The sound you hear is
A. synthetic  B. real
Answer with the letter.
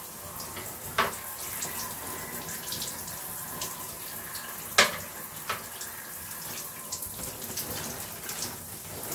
B